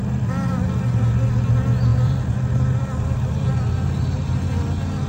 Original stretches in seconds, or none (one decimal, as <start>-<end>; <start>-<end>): 0.0-1.9; 3.5-5.1